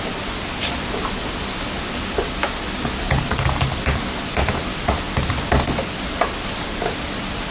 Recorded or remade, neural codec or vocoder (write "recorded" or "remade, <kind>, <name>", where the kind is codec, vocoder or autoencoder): recorded